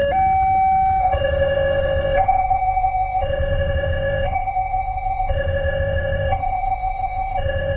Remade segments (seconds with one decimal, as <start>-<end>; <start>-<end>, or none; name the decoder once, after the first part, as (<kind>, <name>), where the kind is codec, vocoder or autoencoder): 1.0-7.8 (codec, ZipCodec)